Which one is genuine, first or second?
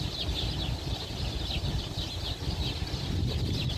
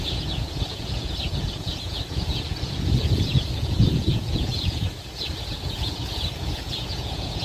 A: first